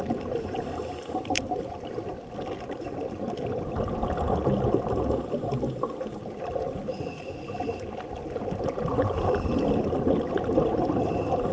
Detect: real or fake real